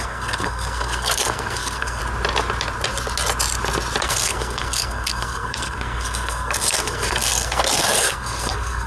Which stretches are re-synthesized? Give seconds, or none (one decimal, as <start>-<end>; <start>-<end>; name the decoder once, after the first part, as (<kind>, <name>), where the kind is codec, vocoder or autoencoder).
0.0-2.0 (codec, SNAC); 4.0-8.9